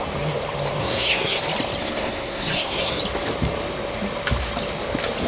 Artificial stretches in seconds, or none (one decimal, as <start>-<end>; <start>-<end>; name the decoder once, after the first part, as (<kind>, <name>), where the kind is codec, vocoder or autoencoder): 0.8-1.4 (codec, SNAC); 1.8-3.0